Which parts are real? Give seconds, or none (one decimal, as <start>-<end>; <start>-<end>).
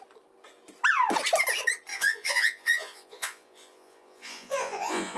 0.0-1.9